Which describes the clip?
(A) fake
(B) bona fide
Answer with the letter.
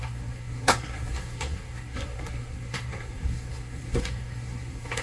A